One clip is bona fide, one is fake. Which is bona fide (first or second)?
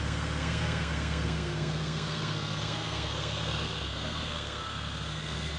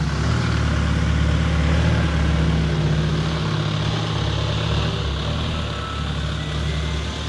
second